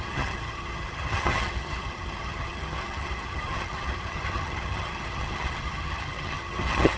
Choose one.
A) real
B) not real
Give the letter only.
B